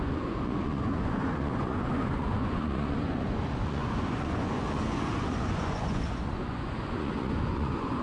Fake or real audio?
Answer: fake